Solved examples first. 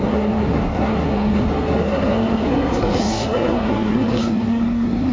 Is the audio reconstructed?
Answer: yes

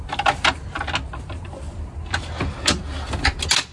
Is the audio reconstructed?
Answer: no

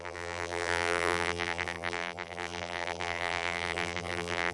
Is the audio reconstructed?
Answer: yes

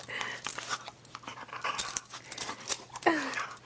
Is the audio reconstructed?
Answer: no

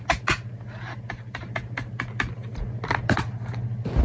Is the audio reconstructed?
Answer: no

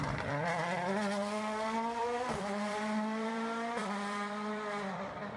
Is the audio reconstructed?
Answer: yes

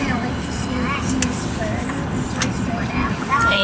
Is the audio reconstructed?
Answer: no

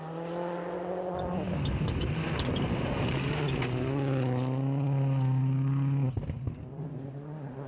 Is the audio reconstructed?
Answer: no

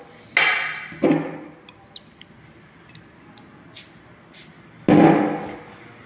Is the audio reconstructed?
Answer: no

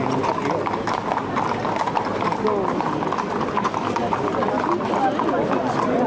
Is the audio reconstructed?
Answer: no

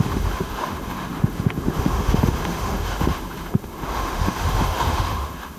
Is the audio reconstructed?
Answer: yes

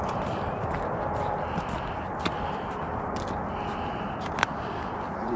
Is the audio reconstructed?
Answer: no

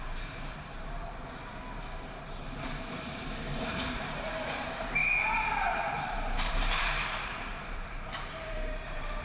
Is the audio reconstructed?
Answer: yes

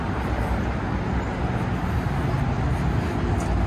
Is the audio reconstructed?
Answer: no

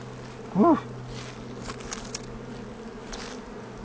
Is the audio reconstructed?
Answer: no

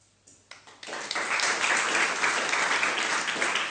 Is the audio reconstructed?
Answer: no